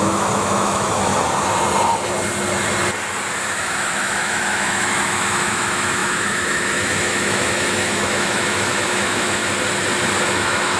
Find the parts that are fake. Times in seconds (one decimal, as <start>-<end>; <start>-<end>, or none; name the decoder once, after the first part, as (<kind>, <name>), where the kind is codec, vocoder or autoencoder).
0.0-1.1 (autoencoder, DAC-VAE); 3.5-9.4; 10.2-10.8